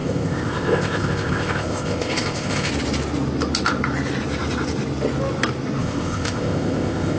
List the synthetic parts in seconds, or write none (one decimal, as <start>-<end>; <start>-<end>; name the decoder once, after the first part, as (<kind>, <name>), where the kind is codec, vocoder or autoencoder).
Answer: 0.0-2.7 (codec, ZipCodec); 5.8-7.2